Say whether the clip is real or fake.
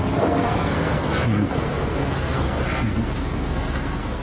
fake